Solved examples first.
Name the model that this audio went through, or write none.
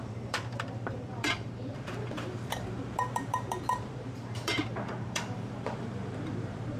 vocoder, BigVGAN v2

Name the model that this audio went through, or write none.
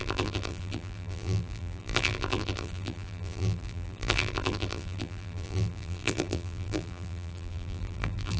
vocoder, BigVGAN v2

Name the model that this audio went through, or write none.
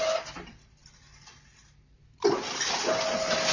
vocoder, BigVGAN v2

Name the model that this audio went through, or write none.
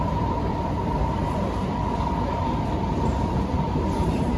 vocoder, BigVGAN v2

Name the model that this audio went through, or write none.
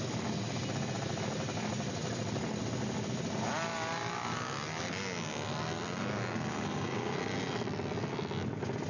none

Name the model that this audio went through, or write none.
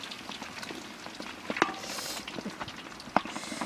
none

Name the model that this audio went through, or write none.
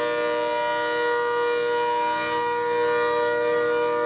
none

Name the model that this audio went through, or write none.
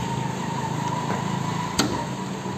none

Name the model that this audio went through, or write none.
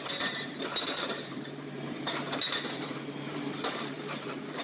vocoder, BigVGAN v2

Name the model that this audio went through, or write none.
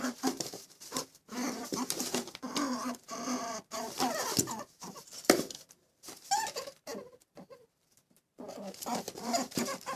vocoder, BigVGAN v2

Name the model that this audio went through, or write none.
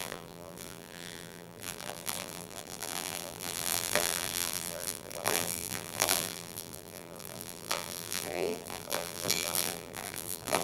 vocoder, BigVGAN v2